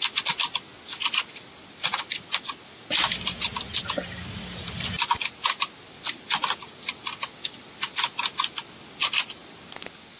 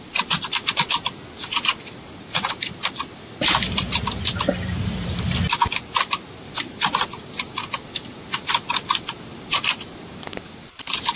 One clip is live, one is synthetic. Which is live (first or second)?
first